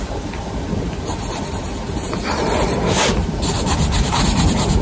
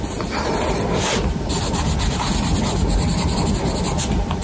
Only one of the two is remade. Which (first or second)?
first